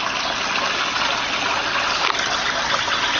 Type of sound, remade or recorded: recorded